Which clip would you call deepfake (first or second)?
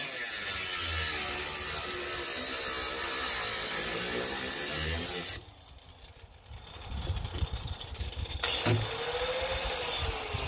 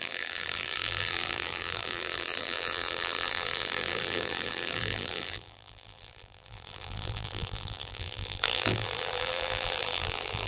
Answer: second